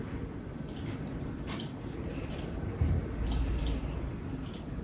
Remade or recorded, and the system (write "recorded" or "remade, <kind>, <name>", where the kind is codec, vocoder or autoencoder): remade, vocoder, BigVGAN v2